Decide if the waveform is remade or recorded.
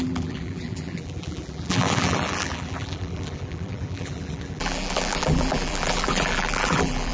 remade